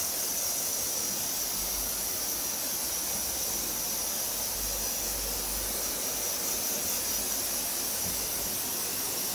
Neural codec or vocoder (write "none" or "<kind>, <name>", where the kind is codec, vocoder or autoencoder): none